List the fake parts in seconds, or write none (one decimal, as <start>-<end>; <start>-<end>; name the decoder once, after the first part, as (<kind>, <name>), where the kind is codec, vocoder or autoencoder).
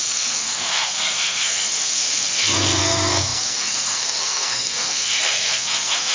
0.0-6.1 (codec, SNAC)